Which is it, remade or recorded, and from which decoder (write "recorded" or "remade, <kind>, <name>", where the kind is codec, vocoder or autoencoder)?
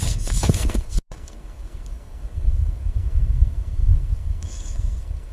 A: remade, codec, SNAC